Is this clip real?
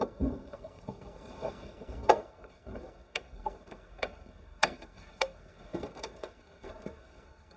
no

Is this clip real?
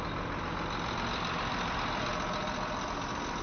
yes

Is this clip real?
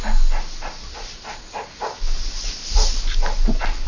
yes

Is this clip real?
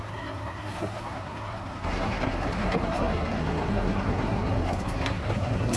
no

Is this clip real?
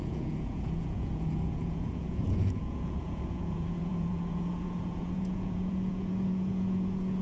no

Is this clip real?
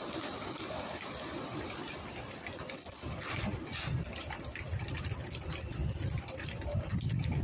no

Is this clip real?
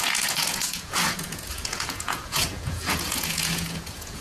no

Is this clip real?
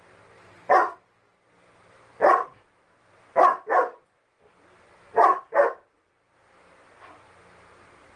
yes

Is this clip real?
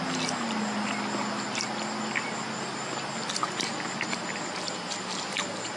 yes